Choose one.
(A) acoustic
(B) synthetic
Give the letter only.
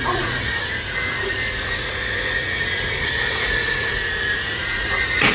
B